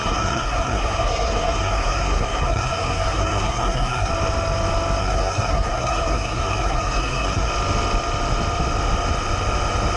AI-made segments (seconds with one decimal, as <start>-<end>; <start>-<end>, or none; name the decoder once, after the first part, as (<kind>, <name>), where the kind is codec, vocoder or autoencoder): 0.0-4.1 (codec, SNAC); 5.0-7.5

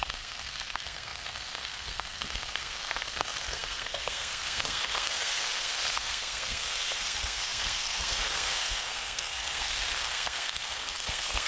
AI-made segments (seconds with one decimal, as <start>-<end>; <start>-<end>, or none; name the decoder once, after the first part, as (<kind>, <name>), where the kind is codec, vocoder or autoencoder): 0.0-11.5 (codec, SNAC)

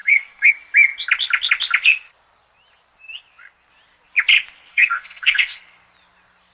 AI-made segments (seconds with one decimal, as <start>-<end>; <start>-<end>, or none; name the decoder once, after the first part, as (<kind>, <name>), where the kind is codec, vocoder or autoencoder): 0.0-0.5 (codec, SNAC); 4.7-5.6

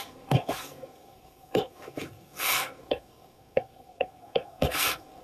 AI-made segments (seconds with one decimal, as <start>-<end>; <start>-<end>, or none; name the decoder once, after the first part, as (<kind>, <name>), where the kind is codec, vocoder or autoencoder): 0.0-5.2 (codec, SNAC)

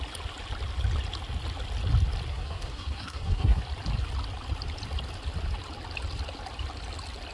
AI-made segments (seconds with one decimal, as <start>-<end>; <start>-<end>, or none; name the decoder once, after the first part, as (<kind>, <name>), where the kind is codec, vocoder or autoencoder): 2.3-3.6 (codec, SNAC)

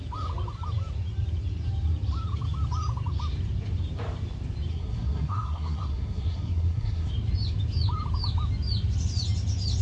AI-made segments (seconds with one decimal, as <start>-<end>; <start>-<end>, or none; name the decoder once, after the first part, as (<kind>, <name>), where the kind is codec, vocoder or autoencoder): 4.7-7.1 (codec, SNAC)